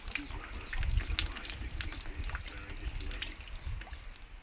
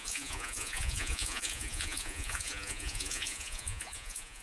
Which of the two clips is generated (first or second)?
second